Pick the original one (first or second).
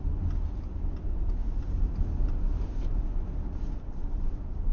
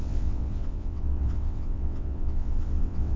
first